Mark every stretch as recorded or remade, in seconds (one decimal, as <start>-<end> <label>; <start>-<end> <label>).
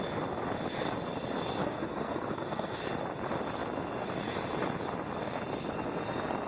0.0-1.6 recorded; 1.6-2.8 remade; 2.8-6.5 recorded